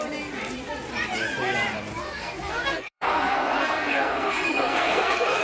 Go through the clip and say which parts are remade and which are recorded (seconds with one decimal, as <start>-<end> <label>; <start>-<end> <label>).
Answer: 0.0-2.0 recorded; 2.0-5.4 remade